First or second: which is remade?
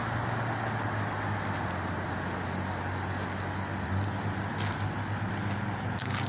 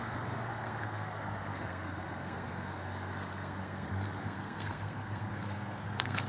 second